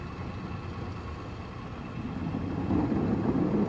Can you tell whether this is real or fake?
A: real